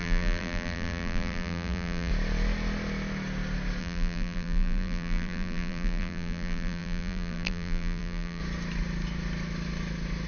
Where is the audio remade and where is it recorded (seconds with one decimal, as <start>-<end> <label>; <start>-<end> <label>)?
0.0-2.1 remade; 2.1-3.8 recorded; 3.8-8.4 remade; 8.4-10.3 recorded